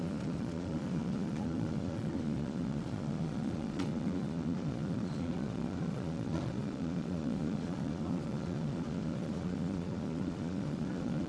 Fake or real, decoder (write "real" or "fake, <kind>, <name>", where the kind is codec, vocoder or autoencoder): fake, vocoder, Vocos